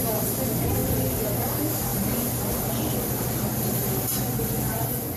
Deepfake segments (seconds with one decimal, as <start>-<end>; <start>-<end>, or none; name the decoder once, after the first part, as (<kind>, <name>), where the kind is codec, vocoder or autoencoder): none